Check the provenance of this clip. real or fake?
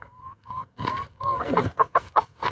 fake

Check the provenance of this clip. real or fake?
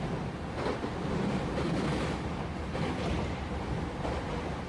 real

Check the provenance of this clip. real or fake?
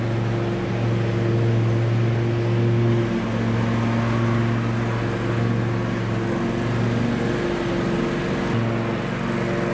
real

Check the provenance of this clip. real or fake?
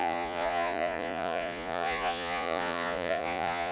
fake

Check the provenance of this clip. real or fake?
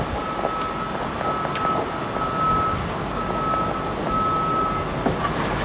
real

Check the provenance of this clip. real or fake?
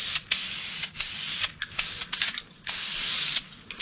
real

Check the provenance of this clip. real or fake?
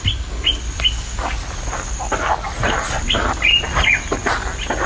real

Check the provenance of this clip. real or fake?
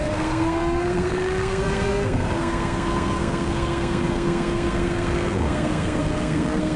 fake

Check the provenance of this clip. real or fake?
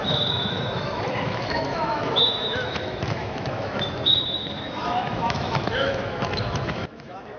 fake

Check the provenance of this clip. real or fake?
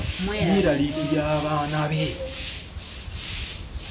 real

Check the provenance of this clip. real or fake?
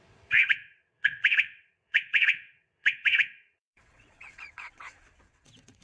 fake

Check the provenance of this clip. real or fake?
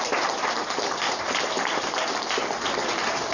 real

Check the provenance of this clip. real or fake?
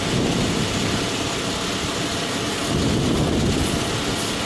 real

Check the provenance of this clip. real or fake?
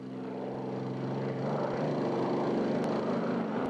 real